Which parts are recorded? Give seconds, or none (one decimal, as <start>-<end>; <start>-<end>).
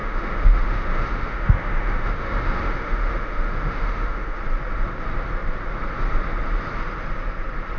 4.4-7.8